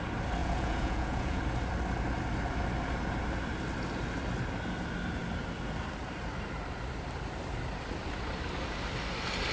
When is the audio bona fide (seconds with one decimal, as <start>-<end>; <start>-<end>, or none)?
0.0-0.4; 1.4-9.5